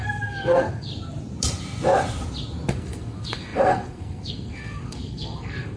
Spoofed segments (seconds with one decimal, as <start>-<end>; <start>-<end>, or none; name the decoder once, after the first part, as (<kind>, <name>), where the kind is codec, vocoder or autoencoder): 0.0-0.9 (codec, SNAC); 2.7-5.8